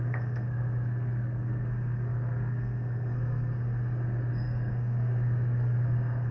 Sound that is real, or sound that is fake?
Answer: fake